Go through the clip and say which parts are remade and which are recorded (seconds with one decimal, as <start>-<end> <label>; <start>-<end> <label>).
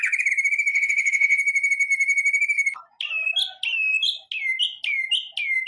0.0-0.7 recorded; 0.7-1.4 remade; 1.4-5.7 recorded